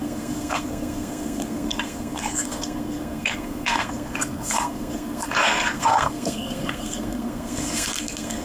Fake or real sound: fake